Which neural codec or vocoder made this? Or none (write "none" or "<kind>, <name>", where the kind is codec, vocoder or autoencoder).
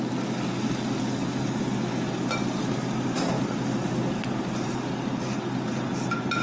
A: none